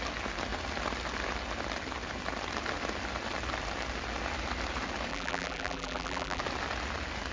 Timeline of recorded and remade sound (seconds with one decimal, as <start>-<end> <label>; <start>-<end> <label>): 0.0-5.1 recorded; 5.1-6.4 remade; 6.4-7.3 recorded